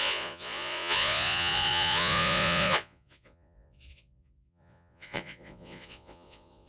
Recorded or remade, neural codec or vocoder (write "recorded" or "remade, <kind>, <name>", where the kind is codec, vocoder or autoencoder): remade, vocoder, Vocos